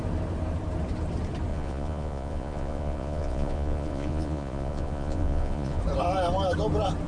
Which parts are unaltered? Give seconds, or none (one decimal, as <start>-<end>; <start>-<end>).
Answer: 0.0-1.5; 5.8-7.1